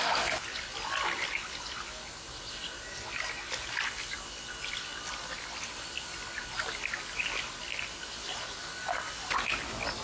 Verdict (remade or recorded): recorded